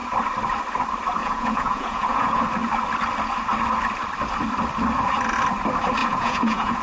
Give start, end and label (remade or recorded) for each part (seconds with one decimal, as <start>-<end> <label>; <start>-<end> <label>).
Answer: 0.0-1.2 recorded; 1.2-2.4 remade; 2.4-6.0 recorded; 6.0-6.8 remade